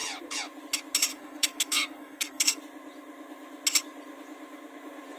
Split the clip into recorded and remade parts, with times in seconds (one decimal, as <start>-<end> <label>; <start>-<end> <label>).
0.0-1.1 recorded; 1.1-2.6 remade; 2.6-5.2 recorded